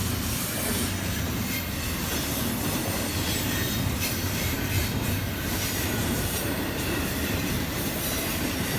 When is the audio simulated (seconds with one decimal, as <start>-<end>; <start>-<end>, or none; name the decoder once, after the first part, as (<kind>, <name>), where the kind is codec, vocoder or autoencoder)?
4.0-8.8 (vocoder, BigVGAN v2)